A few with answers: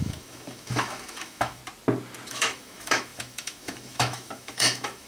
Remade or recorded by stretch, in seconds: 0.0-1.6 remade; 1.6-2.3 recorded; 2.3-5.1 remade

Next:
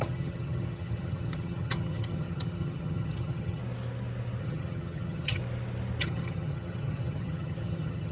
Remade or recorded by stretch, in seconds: 0.0-3.6 remade; 3.6-4.4 recorded; 4.4-5.4 remade; 5.4-6.0 recorded; 6.0-8.1 remade

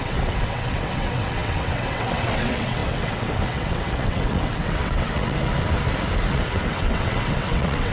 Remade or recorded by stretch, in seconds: 0.0-5.5 remade; 5.5-6.3 recorded; 6.3-7.9 remade

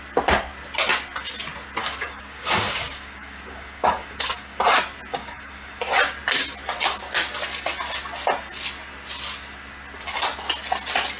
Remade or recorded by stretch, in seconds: 0.0-1.8 recorded; 1.8-4.6 remade; 4.6-5.1 recorded; 5.1-5.8 remade; 5.8-11.2 recorded

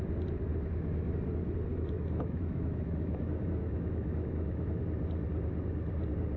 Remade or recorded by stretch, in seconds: 0.0-1.7 recorded; 1.7-4.8 remade; 4.8-6.4 recorded

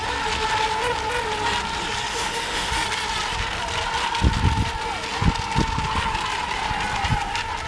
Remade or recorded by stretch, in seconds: 0.0-2.1 recorded; 2.1-2.7 remade; 2.7-7.7 recorded

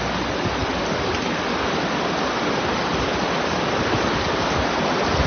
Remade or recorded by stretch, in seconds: 0.0-5.3 recorded